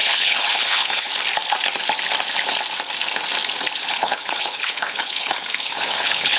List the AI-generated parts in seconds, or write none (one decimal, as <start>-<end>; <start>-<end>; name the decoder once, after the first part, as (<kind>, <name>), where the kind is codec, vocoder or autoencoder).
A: 0.0-1.1 (codec, HILCodec); 3.8-6.4